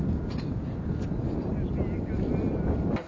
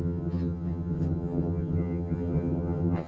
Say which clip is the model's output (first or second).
second